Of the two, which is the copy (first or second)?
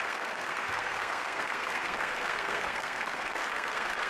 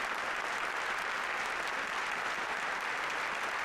first